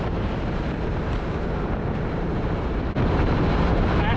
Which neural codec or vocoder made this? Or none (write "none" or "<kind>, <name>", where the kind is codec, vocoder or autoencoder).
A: vocoder, BigVGAN v2